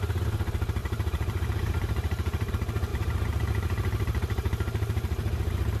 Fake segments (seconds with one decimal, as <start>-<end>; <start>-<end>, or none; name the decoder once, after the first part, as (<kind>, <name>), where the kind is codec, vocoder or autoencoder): 0.8-2.5 (vocoder, BigVGAN v2); 2.9-5.8